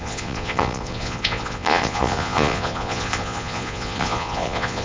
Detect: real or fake fake